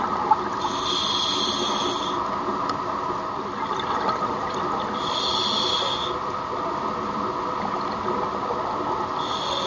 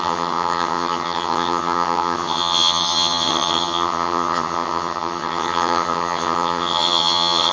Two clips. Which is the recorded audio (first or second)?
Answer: first